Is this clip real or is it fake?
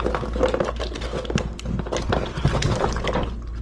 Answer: real